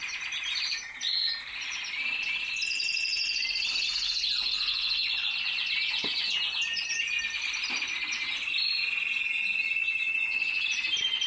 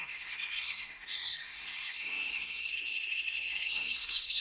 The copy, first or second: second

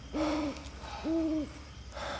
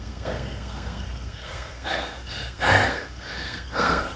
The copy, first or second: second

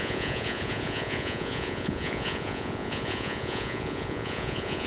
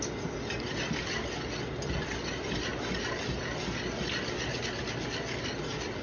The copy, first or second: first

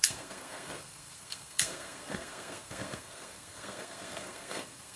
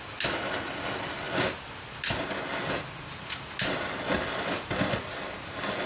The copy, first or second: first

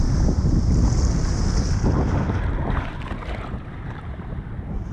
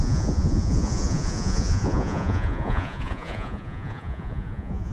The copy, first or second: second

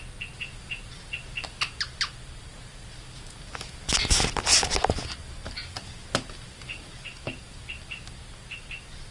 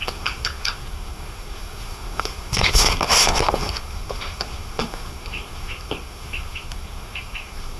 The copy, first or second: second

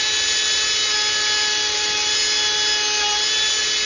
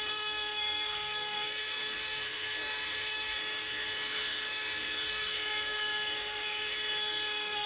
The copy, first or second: second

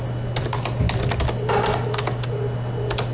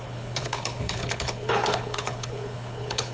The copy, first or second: second